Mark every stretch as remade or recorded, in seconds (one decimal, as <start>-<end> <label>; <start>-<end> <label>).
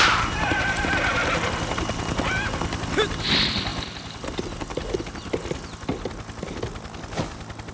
0.0-7.7 recorded